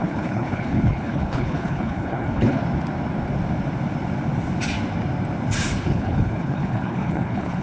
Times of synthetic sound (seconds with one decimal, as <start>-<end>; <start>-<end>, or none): 0.0-2.6; 5.8-7.6